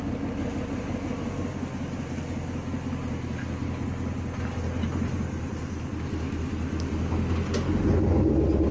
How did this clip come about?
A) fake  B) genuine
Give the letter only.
B